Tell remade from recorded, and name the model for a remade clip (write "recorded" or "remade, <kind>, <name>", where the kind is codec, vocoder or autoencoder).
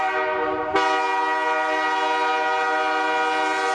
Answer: recorded